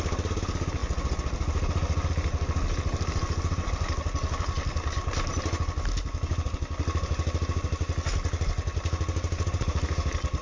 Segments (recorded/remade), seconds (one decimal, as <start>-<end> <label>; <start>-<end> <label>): 0.0-10.4 recorded